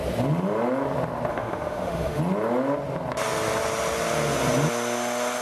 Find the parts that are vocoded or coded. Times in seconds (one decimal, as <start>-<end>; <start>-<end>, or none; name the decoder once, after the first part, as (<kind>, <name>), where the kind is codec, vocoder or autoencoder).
1.3-2.2 (autoencoder, DAC-VAE)